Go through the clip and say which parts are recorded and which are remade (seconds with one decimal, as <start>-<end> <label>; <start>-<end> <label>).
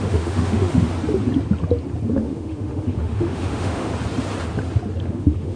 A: 0.0-0.9 remade; 0.9-2.1 recorded; 2.1-3.9 remade; 3.9-5.0 recorded; 5.0-5.6 remade